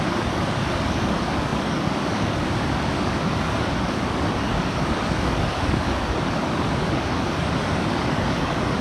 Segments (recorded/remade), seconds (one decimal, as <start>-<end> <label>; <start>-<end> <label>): 0.0-8.8 remade